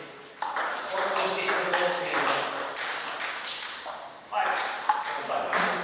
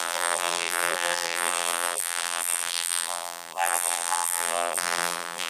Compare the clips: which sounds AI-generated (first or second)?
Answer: second